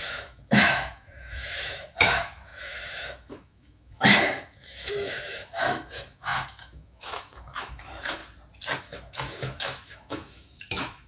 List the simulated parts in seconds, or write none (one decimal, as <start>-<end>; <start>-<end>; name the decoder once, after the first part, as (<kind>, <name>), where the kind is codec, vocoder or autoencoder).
0.0-8.2 (autoencoder, DAC-VAE); 8.8-11.1